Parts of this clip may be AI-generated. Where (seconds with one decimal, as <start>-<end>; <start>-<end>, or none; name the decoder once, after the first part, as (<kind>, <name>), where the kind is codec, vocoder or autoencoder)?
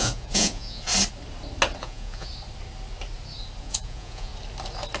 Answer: 0.0-0.9 (vocoder, Vocos); 1.8-2.3; 3.6-4.3